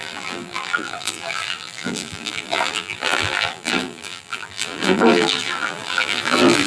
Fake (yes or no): yes